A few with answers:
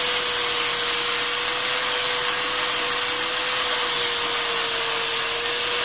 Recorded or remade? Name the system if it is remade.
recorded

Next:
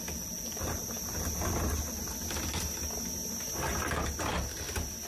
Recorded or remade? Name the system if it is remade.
recorded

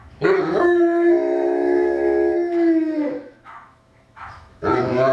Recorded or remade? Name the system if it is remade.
remade, autoencoder, DAC-VAE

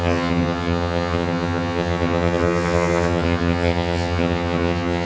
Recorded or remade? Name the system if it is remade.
remade, vocoder, HiFi-GAN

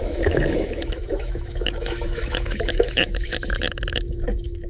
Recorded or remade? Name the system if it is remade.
remade, autoencoder, DAC-VAE